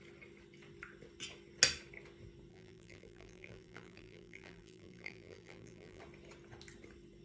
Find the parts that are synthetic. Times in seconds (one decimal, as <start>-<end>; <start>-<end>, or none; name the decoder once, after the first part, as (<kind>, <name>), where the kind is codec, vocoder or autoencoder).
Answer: 2.5-6.0 (vocoder, BigVGAN v2)